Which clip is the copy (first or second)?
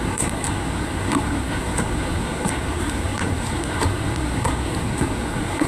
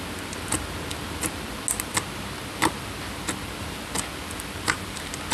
first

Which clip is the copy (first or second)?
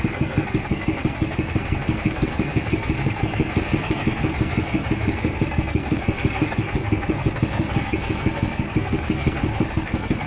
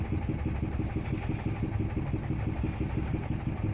first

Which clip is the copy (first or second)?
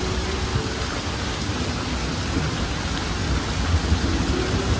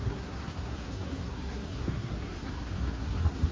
second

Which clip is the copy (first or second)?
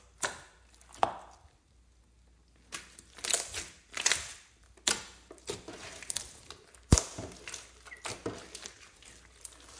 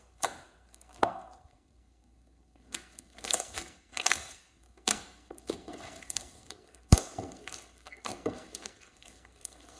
second